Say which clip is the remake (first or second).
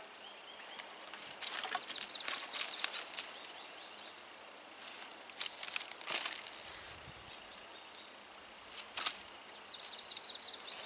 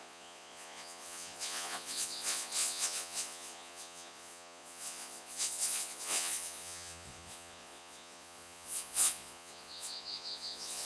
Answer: second